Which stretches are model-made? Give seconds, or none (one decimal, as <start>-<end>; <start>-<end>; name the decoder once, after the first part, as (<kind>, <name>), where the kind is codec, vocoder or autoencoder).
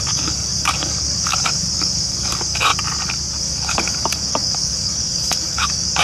0.0-2.7 (codec, DAC); 3.4-6.0